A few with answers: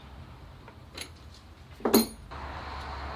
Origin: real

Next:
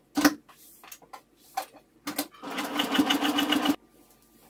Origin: real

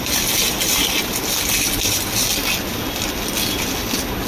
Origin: real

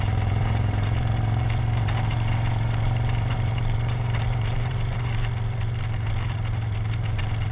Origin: fake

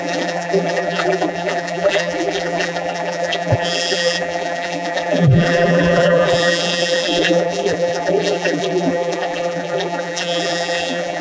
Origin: fake